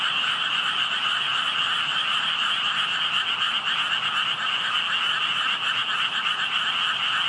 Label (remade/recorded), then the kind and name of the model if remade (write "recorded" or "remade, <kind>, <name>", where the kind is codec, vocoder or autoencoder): recorded